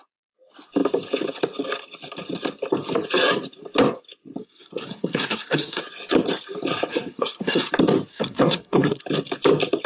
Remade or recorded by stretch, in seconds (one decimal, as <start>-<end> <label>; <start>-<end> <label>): 0.0-4.4 recorded; 4.4-5.8 remade; 5.8-6.9 recorded; 6.9-7.7 remade; 7.7-8.1 recorded; 8.1-9.0 remade; 9.0-9.9 recorded